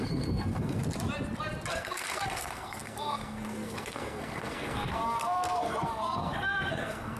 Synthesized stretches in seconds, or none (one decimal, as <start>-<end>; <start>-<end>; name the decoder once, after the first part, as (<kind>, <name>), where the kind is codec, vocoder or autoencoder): 0.0-0.8 (codec, SNAC); 1.7-7.2

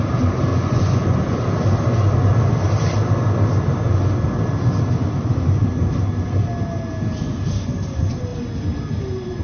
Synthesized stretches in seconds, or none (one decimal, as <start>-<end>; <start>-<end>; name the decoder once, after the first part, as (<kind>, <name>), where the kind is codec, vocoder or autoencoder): 0.5-1.4 (vocoder, Vocos)